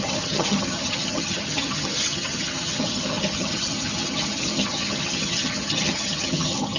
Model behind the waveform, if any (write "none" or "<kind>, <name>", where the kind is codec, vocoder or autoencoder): vocoder, HiFi-GAN